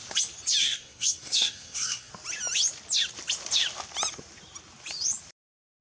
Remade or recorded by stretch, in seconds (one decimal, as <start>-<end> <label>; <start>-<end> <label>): 0.0-0.6 recorded; 0.6-2.1 remade; 2.1-5.8 recorded